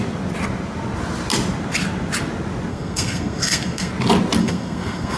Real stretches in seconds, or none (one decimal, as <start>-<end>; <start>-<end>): 0.0-2.7; 3.9-4.4